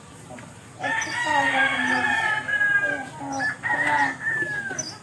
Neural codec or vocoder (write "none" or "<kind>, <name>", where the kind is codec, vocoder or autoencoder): none